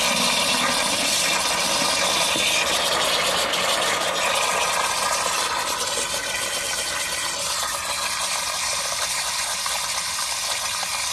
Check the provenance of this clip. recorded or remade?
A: recorded